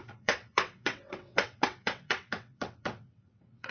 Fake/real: fake